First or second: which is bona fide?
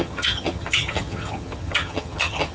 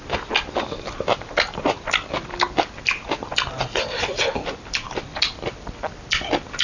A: second